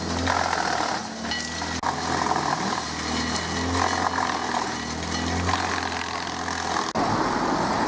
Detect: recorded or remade recorded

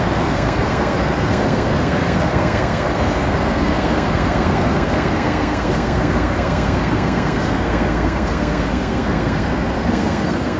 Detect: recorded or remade remade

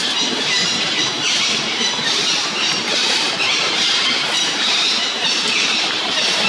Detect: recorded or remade remade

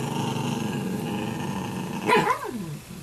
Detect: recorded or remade recorded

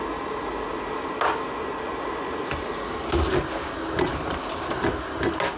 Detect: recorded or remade recorded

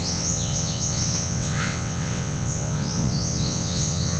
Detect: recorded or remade remade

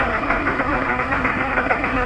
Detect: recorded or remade remade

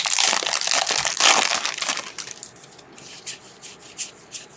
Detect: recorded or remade recorded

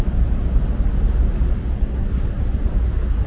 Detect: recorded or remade recorded